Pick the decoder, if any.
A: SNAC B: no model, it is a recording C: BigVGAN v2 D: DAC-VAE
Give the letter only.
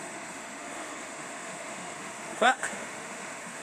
D